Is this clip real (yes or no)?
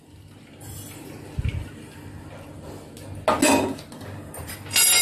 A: yes